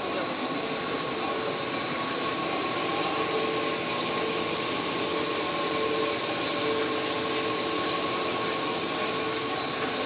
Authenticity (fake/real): real